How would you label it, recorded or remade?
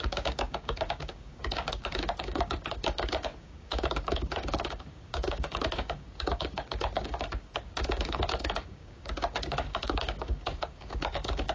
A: remade